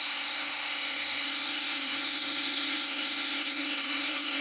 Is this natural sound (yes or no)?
no